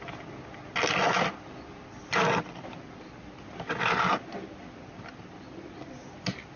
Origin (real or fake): real